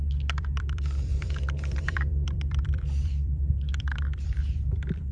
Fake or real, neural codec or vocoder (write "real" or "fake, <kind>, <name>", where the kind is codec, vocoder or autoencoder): fake, vocoder, BigVGAN v2